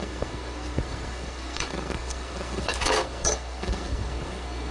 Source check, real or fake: fake